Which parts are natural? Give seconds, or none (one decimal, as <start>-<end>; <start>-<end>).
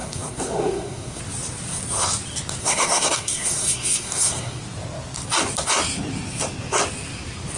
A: 1.2-2.6; 4.6-7.6